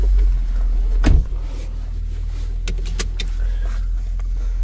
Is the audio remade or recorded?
recorded